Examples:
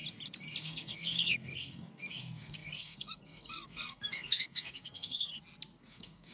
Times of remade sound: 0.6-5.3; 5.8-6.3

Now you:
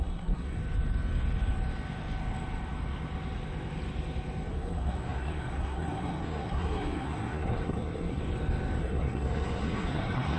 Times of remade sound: 0.0-0.6; 4.5-8.2; 8.8-10.4

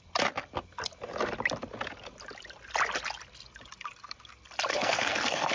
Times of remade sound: 4.7-5.5

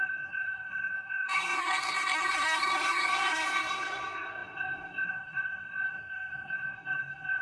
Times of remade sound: 0.0-7.4

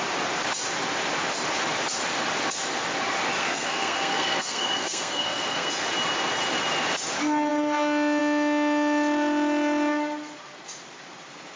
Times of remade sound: 3.4-5.7

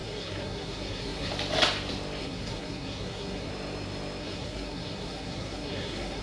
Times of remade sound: 0.0-1.3; 2.2-3.5; 4.2-6.2

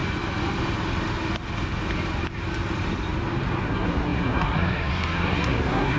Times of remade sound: 3.6-6.0